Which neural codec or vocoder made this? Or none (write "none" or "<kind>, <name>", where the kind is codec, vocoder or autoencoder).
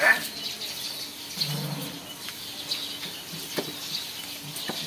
none